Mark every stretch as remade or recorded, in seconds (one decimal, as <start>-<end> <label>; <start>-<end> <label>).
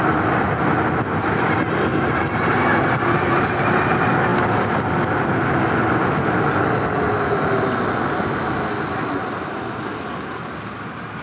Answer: 0.0-11.2 recorded